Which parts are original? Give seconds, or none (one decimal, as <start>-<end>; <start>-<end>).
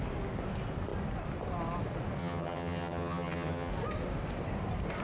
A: 0.0-2.2; 3.7-5.0